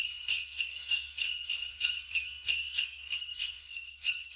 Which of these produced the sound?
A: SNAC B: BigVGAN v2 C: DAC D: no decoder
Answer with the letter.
A